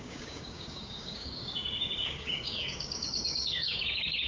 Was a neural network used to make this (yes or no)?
yes